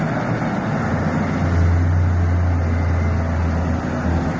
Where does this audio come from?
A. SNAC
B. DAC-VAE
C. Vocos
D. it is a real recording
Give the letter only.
D